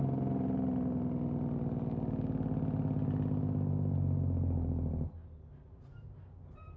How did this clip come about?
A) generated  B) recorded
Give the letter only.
B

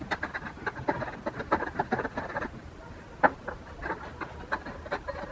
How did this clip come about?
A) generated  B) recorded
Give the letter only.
B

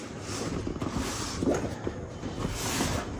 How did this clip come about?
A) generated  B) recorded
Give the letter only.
B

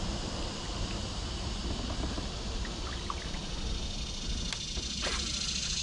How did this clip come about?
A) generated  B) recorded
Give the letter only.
B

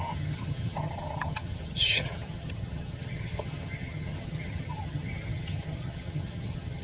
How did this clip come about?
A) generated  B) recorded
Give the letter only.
A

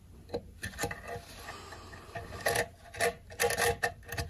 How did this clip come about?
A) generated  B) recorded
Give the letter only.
B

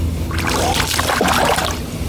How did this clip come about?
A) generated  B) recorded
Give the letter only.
B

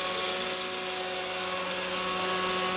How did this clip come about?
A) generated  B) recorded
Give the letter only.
B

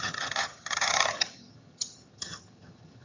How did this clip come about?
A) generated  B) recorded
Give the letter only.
A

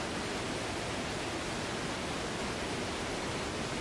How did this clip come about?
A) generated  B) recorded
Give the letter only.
B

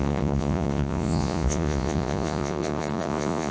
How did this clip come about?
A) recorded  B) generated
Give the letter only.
B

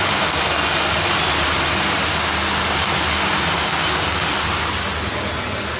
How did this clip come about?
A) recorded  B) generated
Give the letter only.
A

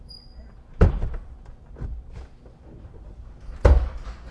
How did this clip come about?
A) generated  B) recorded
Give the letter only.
B